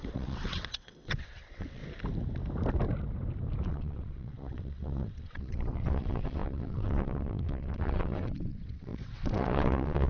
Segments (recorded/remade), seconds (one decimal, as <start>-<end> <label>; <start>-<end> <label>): 0.0-1.8 remade; 1.8-3.7 recorded; 3.7-10.1 remade